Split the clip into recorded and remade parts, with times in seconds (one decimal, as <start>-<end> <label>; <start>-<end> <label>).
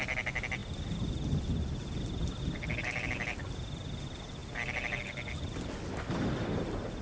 0.0-7.0 recorded